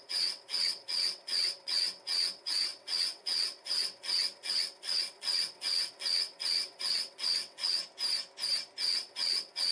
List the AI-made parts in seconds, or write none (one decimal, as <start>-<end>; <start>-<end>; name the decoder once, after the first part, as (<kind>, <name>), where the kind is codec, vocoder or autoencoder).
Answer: 0.0-7.8 (vocoder, WaveNeXt); 8.8-9.7